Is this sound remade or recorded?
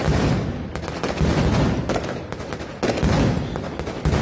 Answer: recorded